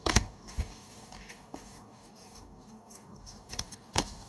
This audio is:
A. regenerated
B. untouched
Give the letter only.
A